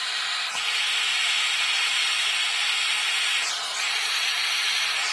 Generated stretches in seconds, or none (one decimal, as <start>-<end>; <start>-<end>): none